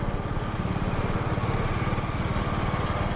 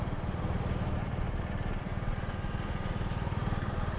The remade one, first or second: second